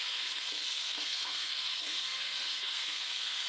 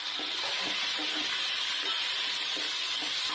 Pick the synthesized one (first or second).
first